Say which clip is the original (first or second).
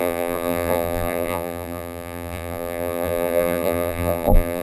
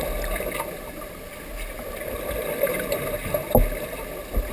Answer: second